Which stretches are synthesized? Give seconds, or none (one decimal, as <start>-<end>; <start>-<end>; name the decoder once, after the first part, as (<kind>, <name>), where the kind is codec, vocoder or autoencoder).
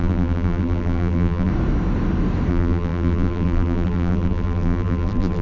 0.0-1.5 (vocoder, BigVGAN v2); 2.5-5.4